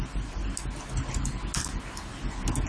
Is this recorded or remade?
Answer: recorded